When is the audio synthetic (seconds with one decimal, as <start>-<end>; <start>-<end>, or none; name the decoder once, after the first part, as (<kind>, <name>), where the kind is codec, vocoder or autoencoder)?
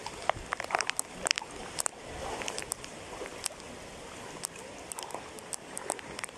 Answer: 0.0-3.3 (vocoder, BigVGAN v2); 4.6-6.4